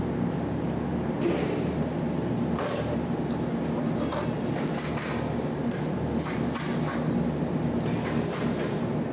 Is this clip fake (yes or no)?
no